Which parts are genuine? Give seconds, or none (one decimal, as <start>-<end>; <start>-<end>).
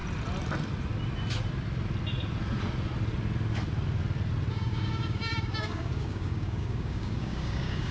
0.0-4.5